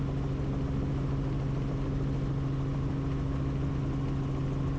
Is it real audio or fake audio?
real